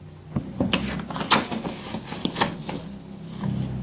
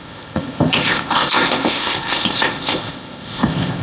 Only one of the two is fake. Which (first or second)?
second